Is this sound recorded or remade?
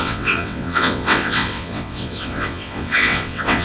remade